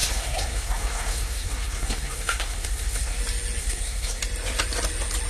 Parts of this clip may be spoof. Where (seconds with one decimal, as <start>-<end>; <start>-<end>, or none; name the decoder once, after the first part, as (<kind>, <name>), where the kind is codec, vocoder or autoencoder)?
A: 0.0-3.2 (codec, SNAC); 3.6-4.2